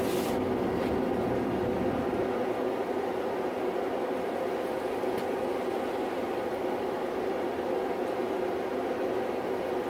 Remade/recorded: recorded